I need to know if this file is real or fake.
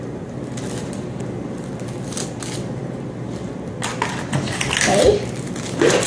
real